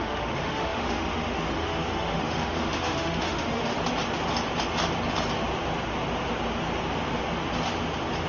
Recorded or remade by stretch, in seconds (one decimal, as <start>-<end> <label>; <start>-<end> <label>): 0.0-3.6 remade; 3.6-8.3 recorded